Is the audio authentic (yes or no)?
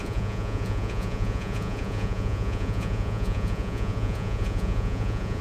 no